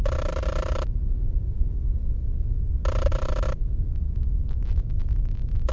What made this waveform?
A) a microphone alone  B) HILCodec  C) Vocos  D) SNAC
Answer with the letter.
A